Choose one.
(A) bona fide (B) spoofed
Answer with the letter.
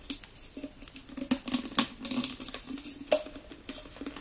A